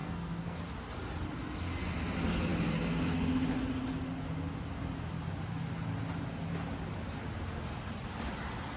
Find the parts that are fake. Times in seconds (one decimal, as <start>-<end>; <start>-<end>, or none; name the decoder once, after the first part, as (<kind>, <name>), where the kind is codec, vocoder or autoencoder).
0.0-0.6 (codec, SNAC)